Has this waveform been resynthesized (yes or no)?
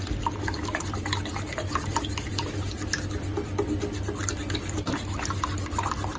no